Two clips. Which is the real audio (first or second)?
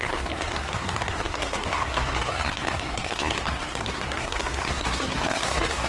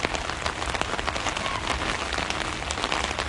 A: second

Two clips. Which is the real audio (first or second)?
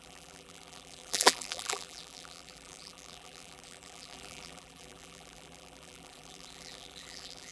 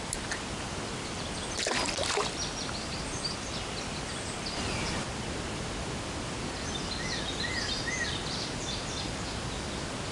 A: second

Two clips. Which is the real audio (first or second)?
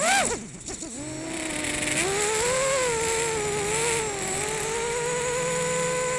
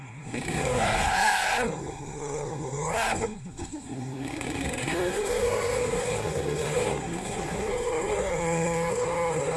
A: first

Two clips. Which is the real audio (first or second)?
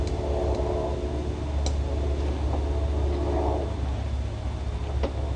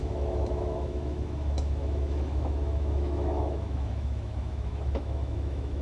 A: first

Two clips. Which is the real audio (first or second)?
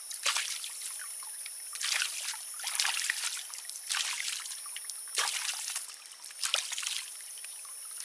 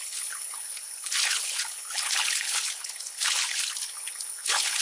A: first